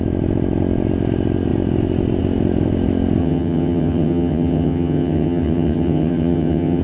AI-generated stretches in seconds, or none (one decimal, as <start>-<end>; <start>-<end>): 3.2-6.8